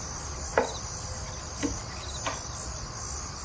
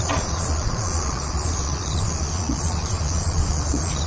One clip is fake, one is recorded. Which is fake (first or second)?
second